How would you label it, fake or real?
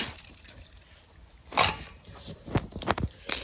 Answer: real